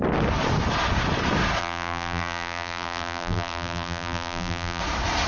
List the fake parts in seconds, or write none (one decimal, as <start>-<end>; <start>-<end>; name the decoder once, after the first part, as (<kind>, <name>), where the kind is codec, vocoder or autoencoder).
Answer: 1.6-4.8 (vocoder, BigVGAN v2)